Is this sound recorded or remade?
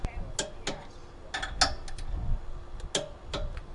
recorded